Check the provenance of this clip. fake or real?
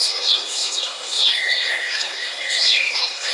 fake